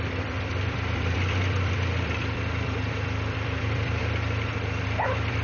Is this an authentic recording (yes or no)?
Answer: no